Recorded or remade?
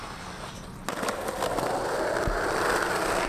recorded